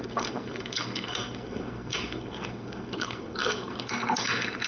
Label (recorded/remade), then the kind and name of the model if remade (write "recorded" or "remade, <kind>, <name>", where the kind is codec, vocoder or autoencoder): remade, codec, SNAC